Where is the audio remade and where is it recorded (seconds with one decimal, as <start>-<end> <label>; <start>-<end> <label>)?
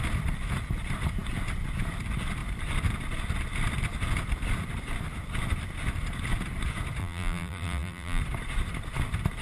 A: 0.0-7.0 recorded; 7.0-8.2 remade; 8.2-9.4 recorded